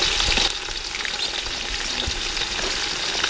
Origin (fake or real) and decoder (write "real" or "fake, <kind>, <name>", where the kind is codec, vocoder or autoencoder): real